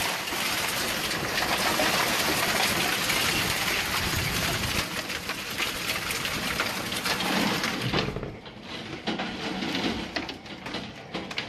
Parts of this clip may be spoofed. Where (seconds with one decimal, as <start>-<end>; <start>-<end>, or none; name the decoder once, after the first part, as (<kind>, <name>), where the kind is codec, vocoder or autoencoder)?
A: none

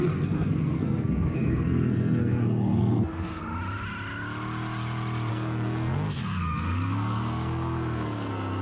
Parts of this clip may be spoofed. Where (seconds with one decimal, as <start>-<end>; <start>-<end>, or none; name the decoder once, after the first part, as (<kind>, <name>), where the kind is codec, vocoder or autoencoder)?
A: 0.0-3.4 (codec, SNAC); 5.3-8.6

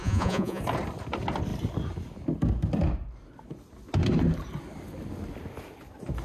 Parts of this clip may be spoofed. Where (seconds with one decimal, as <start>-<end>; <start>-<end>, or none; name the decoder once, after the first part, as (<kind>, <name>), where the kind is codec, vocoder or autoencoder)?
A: 0.0-0.6 (vocoder, Vocos)

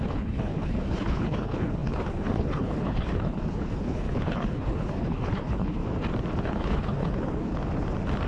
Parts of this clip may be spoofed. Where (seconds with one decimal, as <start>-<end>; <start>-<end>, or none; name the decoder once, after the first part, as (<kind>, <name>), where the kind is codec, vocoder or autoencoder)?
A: 0.0-5.8 (codec, HILCodec); 6.4-7.5

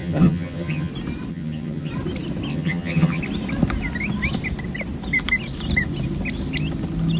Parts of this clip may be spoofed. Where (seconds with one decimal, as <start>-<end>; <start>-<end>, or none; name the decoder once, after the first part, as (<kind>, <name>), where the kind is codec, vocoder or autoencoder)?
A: 0.0-0.9 (vocoder, HiFi-GAN); 1.3-1.9; 2.5-3.2

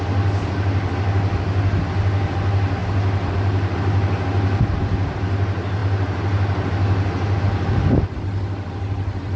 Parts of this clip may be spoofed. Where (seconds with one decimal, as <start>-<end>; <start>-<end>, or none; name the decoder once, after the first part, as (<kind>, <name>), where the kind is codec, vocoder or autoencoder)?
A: none

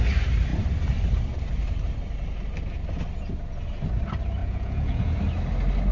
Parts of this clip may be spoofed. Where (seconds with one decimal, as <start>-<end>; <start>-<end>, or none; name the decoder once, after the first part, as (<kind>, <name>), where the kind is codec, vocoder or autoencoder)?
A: 4.4-5.2 (vocoder, Vocos)

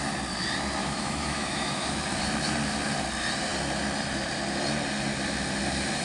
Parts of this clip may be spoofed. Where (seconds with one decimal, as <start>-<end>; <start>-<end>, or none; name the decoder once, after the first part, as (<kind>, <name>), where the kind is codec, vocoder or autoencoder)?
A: 0.8-2.0 (autoencoder, DAC-VAE)